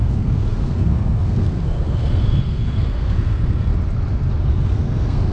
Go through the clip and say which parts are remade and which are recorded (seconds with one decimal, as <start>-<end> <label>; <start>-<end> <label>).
0.0-3.7 remade; 3.7-4.4 recorded; 4.4-5.3 remade